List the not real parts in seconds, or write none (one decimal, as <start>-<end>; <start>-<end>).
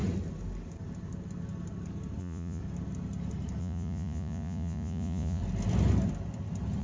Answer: 2.2-2.6; 3.6-5.4